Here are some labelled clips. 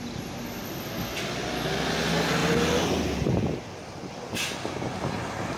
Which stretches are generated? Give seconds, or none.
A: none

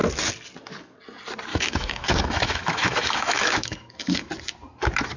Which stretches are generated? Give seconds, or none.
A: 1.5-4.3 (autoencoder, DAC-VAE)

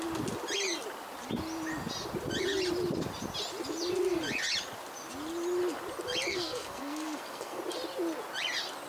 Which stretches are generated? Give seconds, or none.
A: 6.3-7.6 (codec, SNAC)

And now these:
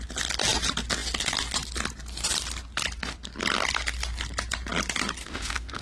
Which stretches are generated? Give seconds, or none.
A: 5.2-5.8 (autoencoder, DAC-VAE)